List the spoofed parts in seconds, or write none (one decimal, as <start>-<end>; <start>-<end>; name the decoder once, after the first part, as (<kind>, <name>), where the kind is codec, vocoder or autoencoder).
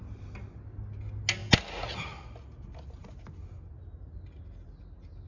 none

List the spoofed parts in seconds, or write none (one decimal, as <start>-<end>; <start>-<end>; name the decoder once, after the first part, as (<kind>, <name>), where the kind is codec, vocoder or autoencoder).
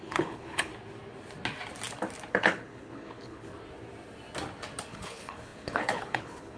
0.0-0.7 (codec, HILCodec); 2.3-3.5; 4.9-6.6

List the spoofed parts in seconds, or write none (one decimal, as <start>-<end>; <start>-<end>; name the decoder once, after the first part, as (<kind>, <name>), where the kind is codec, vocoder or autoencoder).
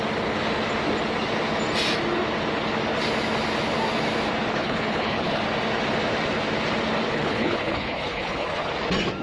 4.5-5.4 (codec, HILCodec); 7.1-8.7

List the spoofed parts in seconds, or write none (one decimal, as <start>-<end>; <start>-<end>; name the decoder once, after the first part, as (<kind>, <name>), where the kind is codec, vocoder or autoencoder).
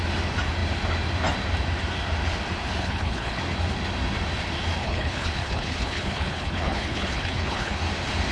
2.8-3.4 (codec, HILCodec); 4.8-7.8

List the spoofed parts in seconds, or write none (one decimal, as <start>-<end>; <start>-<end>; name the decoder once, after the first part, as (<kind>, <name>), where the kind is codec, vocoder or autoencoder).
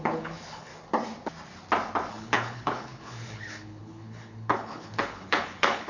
0.0-0.7 (codec, HILCodec); 2.1-5.9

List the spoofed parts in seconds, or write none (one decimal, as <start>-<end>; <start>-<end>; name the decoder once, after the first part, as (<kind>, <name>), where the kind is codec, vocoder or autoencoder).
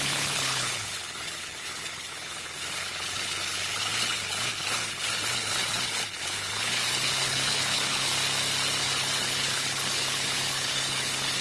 0.0-8.1 (codec, HILCodec); 8.8-11.4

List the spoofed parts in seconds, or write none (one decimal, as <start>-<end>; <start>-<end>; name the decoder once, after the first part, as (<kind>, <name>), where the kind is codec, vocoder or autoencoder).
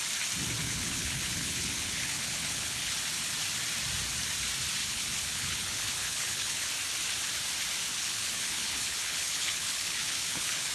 0.6-2.9 (codec, HILCodec); 4.8-6.7; 7.9-10.7